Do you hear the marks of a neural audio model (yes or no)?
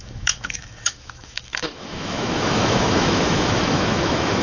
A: yes